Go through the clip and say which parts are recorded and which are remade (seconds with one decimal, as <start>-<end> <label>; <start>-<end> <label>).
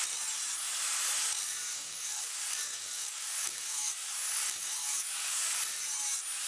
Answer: 0.0-1.7 recorded; 1.7-5.6 remade; 5.6-6.5 recorded